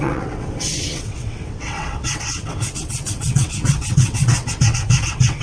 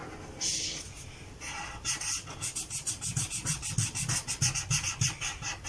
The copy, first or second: first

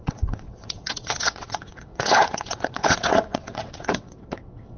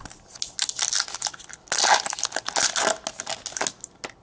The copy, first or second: first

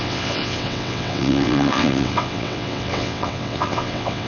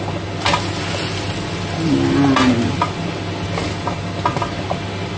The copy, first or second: first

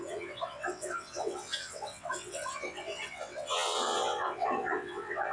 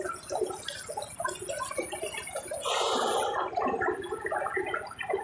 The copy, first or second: first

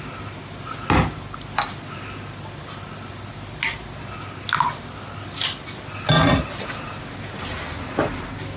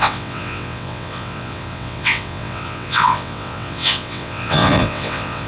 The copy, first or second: second